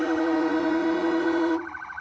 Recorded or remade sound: remade